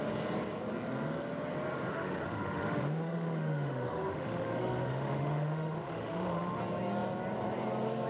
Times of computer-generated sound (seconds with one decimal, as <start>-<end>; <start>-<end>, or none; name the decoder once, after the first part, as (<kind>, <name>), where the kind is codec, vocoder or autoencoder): 1.9-6.6 (autoencoder, DAC-VAE)